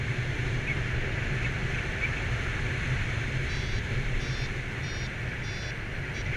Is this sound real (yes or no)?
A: yes